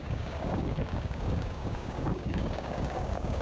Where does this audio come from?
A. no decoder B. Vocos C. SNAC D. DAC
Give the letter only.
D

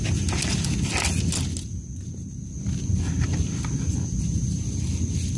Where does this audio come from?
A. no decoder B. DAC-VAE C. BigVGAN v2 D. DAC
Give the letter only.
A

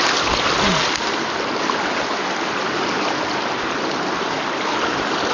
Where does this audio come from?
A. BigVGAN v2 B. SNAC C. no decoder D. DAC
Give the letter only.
C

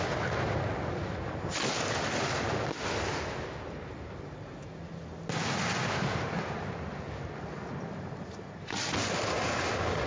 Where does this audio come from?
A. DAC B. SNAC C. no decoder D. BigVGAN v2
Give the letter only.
C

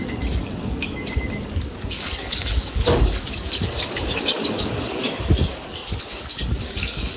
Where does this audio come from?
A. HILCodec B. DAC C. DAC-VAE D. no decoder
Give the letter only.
B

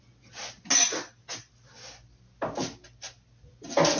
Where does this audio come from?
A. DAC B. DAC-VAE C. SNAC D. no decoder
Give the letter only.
D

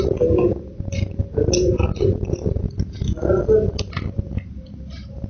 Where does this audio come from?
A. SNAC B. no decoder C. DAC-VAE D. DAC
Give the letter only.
B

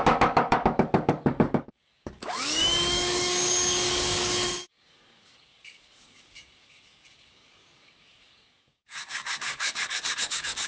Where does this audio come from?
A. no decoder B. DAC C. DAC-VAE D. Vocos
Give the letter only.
B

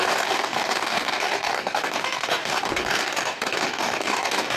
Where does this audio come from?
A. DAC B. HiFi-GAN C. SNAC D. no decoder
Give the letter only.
A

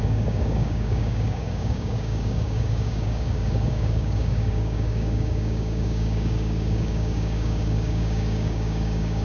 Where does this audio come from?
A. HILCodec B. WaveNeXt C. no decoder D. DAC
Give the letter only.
D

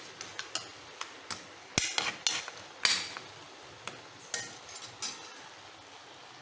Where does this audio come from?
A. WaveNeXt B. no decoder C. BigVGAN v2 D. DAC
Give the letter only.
B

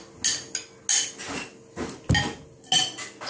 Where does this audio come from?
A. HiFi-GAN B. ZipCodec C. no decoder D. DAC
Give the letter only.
C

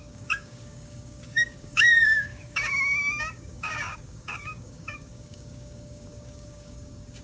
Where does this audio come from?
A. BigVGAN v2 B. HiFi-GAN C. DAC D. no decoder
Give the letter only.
C